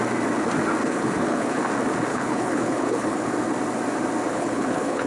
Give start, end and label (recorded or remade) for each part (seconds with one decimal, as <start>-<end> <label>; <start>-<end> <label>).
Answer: 0.0-0.8 recorded; 0.8-1.6 remade; 1.6-2.1 recorded; 2.1-3.3 remade; 3.3-4.3 recorded; 4.3-5.1 remade